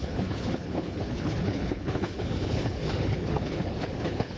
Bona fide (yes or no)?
no